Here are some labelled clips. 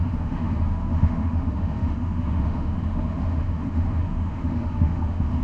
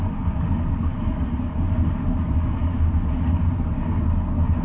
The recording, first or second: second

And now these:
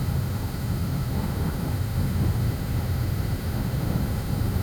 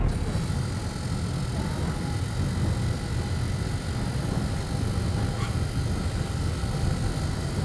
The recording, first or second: second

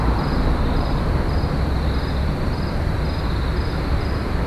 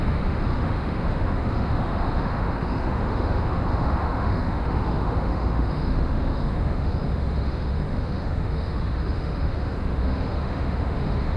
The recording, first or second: first